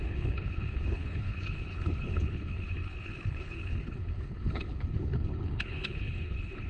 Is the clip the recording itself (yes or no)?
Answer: no